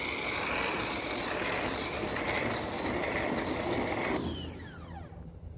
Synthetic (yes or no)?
no